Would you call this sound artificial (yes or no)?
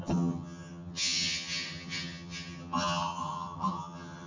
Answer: yes